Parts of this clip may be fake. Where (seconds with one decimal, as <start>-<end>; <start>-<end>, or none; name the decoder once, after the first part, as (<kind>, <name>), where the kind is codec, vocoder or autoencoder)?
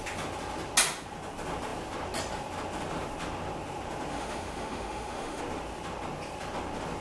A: 4.1-5.4 (autoencoder, DAC-VAE)